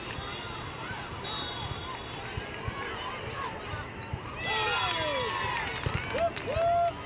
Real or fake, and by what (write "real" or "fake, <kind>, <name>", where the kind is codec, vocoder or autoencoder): real